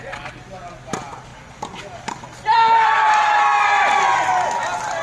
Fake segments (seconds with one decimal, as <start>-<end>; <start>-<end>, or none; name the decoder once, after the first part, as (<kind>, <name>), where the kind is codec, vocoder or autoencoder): none